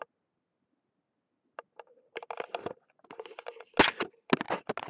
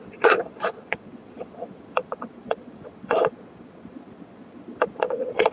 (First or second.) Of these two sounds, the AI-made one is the second